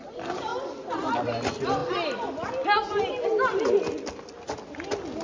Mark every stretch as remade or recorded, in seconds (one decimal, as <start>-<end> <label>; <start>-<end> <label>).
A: 0.0-5.2 recorded